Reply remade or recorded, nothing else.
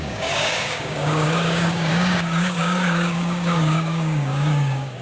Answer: remade